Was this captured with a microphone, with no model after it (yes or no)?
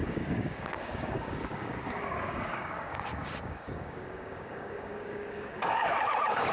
no